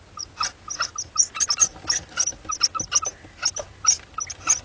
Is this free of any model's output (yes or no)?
yes